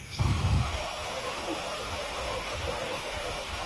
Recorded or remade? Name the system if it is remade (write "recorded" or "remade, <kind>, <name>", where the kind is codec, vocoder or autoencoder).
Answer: remade, autoencoder, DAC-VAE